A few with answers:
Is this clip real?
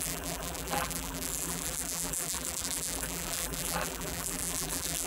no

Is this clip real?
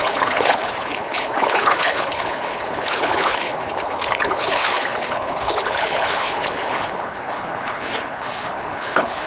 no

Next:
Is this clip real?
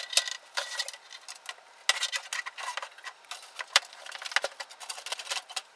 yes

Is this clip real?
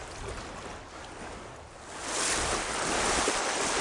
yes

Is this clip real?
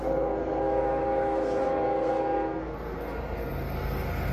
no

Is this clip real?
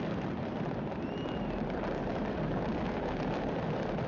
yes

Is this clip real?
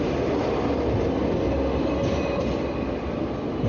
yes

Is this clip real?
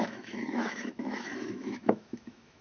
no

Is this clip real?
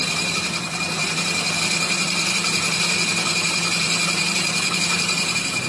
no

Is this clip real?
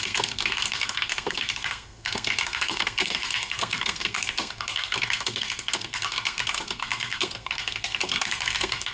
no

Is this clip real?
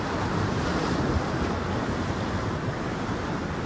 yes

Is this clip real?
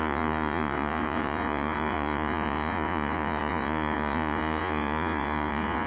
no